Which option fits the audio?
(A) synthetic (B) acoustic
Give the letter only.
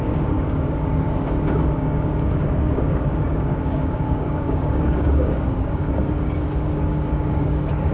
A